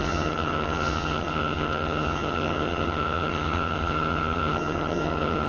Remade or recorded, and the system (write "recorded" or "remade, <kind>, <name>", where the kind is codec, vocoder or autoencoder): remade, vocoder, HiFi-GAN